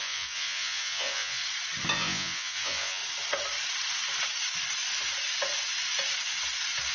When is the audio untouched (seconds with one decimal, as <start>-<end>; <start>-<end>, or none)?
1.4-1.9; 3.0-6.9